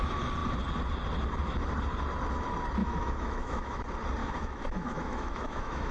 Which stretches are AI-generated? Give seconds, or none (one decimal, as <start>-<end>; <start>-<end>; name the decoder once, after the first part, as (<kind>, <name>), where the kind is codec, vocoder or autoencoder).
2.8-3.8 (autoencoder, DAC-VAE); 4.2-5.9

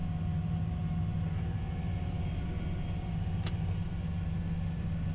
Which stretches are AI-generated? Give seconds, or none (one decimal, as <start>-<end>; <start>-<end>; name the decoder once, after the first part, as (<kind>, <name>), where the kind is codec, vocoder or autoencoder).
none